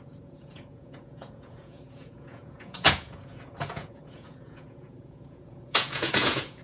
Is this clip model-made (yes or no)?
yes